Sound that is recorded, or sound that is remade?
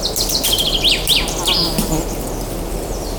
recorded